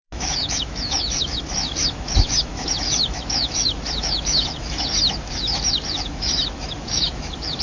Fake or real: fake